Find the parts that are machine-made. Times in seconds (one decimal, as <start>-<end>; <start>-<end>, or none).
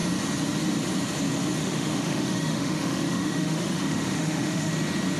1.6-4.7